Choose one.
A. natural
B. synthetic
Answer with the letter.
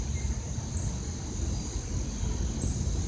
A